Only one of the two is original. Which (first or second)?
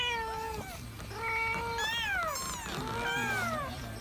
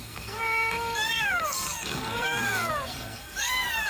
first